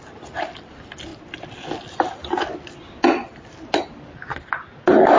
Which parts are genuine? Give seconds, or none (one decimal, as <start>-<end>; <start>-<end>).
0.0-5.2